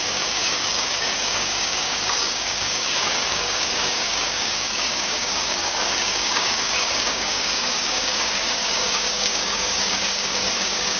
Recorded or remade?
remade